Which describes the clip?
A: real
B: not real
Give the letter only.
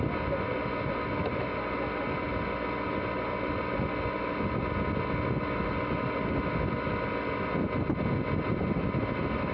A